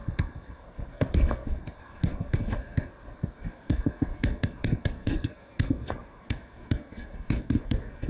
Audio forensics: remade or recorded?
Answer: remade